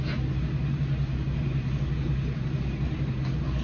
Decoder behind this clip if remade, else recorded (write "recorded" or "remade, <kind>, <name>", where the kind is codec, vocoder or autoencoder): recorded